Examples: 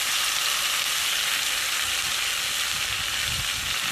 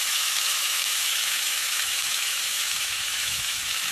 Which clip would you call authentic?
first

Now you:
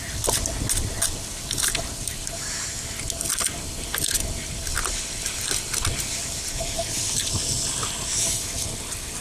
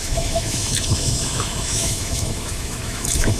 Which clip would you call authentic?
first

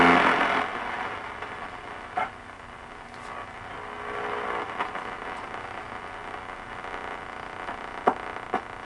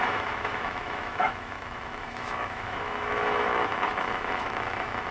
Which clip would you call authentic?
first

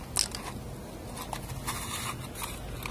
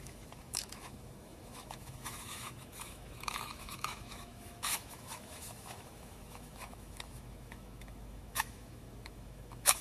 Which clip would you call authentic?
first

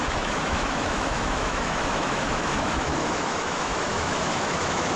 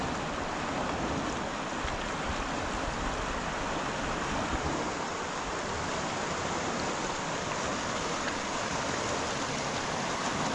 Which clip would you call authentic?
second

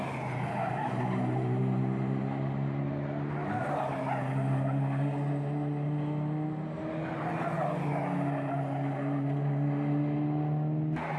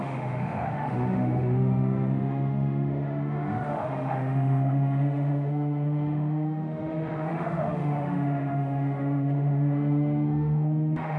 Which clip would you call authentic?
first